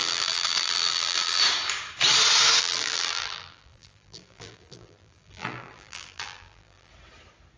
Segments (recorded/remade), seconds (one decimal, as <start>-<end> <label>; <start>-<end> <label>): 0.0-1.4 remade; 1.4-2.6 recorded; 2.6-6.9 remade; 6.9-7.6 recorded